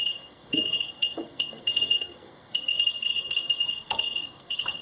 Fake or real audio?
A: fake